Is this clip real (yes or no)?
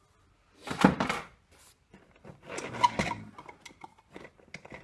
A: yes